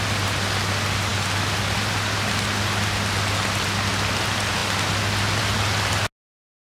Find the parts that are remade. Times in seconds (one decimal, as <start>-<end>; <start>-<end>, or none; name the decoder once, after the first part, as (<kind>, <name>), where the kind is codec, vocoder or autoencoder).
none